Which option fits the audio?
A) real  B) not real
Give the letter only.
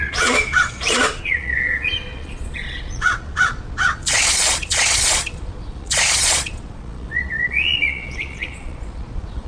B